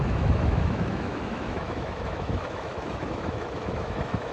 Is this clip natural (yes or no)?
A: no